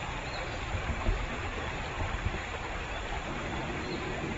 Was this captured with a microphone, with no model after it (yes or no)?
no